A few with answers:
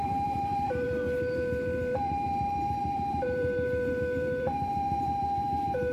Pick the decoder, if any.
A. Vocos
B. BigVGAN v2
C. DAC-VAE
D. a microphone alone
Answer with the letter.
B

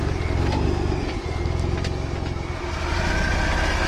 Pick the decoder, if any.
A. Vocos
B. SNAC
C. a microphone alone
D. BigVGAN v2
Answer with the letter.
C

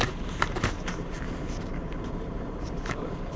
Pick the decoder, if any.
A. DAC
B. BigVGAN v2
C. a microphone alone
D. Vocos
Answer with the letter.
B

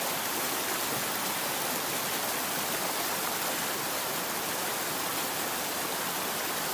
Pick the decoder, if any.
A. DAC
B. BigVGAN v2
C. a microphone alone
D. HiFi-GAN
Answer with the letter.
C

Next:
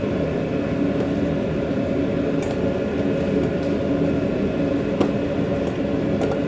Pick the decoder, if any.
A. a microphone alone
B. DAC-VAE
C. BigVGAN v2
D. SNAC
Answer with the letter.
A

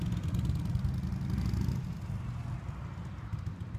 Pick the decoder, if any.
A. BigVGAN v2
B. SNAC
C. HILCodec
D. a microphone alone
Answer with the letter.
D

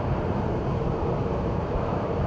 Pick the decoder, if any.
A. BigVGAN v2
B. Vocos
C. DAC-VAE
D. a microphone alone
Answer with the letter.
A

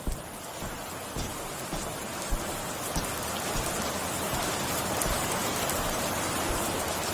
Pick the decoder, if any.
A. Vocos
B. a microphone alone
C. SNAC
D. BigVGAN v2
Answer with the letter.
B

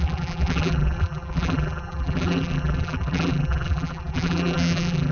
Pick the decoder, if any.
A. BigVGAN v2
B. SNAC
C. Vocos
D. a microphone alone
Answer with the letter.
A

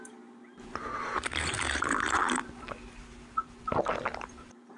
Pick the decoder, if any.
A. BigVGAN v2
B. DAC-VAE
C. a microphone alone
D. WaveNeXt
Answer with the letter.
A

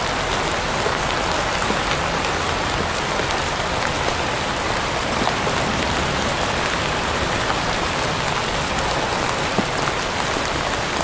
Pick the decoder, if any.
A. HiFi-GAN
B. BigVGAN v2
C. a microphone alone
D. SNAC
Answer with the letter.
C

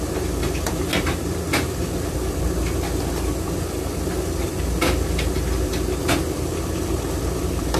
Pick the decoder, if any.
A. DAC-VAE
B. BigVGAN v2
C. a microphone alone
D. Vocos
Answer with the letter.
B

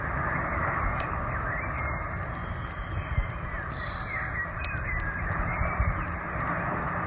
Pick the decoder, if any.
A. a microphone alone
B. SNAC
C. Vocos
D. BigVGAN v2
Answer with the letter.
A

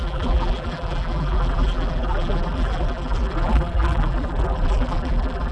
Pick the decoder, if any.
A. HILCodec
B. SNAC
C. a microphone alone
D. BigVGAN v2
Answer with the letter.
D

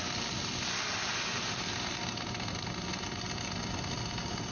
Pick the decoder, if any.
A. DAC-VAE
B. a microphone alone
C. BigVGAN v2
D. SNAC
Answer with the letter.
B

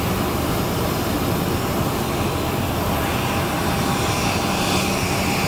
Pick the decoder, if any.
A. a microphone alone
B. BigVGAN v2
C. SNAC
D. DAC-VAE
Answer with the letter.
A